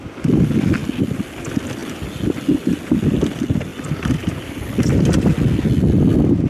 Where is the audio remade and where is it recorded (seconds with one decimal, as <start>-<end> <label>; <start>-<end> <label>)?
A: 0.0-6.5 recorded

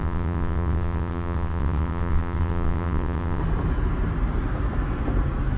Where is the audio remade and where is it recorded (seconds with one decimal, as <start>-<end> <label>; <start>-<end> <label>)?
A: 0.0-3.4 remade; 3.4-5.6 recorded

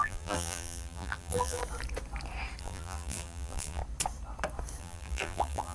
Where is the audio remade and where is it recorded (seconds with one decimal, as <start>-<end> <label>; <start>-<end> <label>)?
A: 0.0-1.6 remade; 1.6-2.6 recorded; 2.6-3.8 remade; 3.8-4.8 recorded; 4.8-5.7 remade

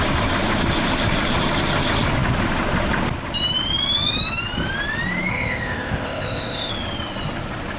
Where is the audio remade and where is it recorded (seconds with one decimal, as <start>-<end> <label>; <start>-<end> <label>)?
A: 0.0-5.3 recorded; 5.3-6.7 remade; 6.7-7.8 recorded

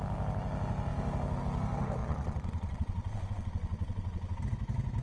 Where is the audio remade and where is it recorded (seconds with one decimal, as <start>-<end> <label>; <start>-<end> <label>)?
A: 0.0-2.0 recorded; 2.0-4.4 remade; 4.4-5.0 recorded

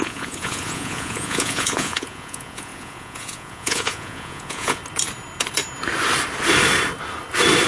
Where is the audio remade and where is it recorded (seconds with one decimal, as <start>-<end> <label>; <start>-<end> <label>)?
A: 0.0-4.8 remade; 4.8-7.7 recorded

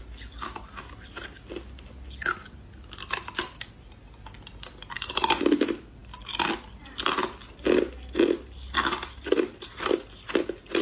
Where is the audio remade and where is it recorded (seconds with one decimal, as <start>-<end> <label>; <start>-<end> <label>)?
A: 0.0-10.8 recorded

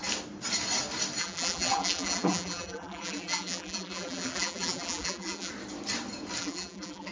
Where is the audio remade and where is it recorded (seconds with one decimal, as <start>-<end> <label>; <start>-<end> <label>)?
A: 0.0-1.2 recorded; 1.2-5.5 remade; 5.5-6.4 recorded; 6.4-7.1 remade